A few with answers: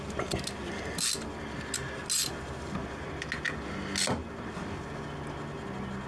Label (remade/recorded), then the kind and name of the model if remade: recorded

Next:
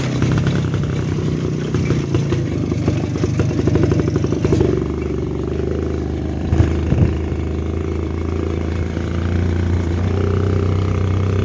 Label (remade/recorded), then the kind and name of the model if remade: recorded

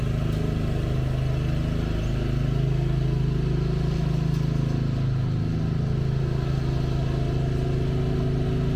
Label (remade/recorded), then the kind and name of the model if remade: recorded